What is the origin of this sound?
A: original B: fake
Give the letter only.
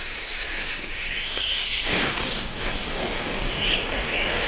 B